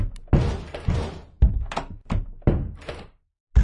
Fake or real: real